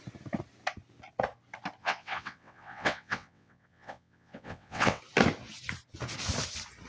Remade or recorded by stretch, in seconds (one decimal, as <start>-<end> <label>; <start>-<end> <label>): 0.0-1.8 recorded; 1.8-5.0 remade; 5.0-6.9 recorded